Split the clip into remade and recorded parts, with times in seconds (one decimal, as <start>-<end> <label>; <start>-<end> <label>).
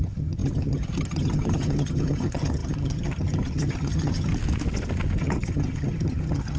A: 0.0-4.3 remade; 4.3-5.2 recorded; 5.2-6.6 remade